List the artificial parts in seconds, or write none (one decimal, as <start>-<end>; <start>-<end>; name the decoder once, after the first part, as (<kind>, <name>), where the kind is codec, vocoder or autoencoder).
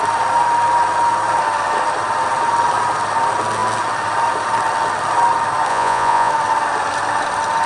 5.7-6.3 (vocoder, Vocos)